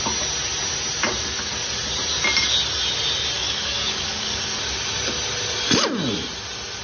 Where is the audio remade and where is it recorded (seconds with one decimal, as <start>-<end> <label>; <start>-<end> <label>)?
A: 0.0-3.4 recorded; 3.4-4.4 remade; 4.4-6.8 recorded